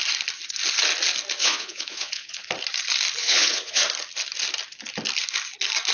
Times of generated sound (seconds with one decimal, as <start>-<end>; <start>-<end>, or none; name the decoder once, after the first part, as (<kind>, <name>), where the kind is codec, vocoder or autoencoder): 1.4-2.5 (vocoder, Vocos); 3.2-3.8